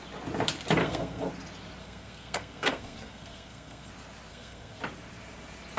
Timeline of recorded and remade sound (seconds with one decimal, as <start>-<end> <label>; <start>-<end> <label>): 0.0-0.8 recorded; 0.8-1.3 remade; 1.3-1.8 recorded; 1.8-3.9 remade; 3.9-4.3 recorded; 4.3-4.8 remade; 4.8-5.8 recorded